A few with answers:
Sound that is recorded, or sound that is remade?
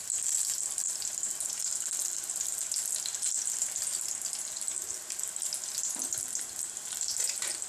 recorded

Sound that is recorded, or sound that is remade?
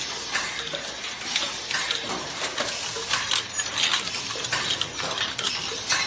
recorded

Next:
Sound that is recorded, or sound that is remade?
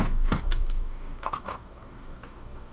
remade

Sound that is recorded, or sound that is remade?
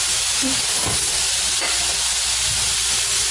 recorded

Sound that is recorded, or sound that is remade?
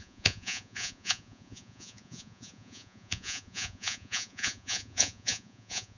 remade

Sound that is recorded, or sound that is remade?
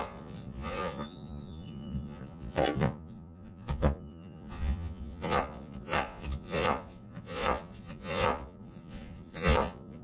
remade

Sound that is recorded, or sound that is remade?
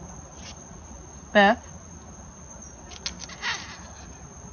recorded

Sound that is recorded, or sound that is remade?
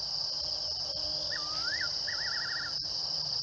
recorded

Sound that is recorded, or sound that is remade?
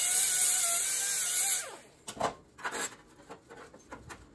recorded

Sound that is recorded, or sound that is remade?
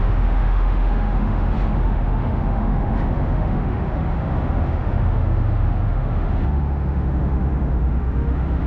remade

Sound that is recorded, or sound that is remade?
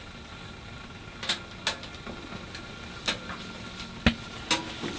recorded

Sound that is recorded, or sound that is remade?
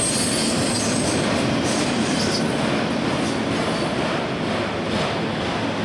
recorded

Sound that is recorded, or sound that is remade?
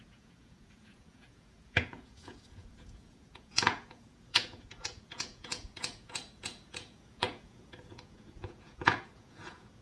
remade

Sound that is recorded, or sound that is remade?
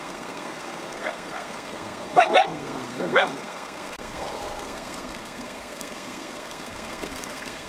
remade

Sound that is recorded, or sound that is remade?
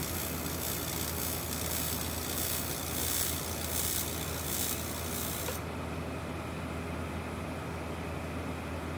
recorded